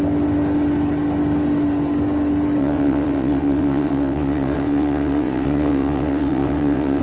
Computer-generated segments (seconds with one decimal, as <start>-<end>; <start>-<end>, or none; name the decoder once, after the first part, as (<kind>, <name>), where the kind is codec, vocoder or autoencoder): 2.6-7.0 (vocoder, WaveNeXt)